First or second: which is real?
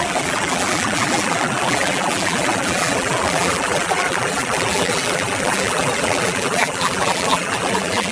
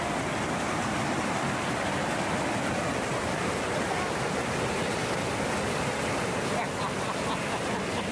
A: second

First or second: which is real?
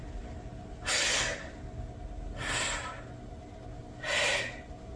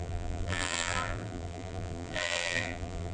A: first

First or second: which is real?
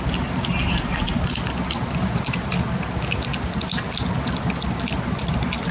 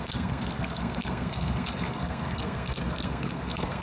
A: first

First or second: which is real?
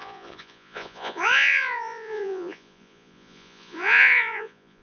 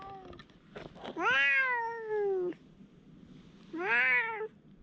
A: second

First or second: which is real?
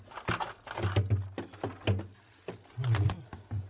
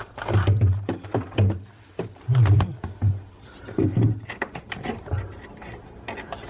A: first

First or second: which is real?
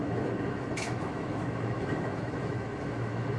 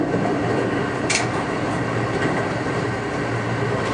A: second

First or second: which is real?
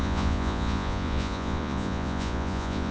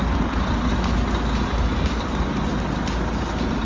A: second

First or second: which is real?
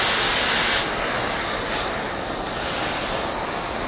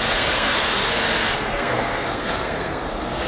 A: first